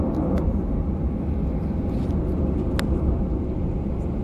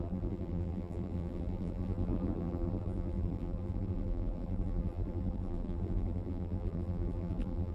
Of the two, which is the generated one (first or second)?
second